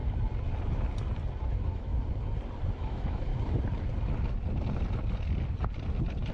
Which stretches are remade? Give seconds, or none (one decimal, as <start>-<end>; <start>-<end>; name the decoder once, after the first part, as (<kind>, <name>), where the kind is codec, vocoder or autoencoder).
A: 1.5-1.9 (autoencoder, DAC-VAE); 2.8-3.3